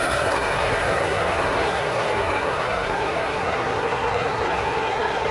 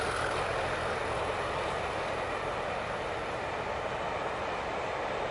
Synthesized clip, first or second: first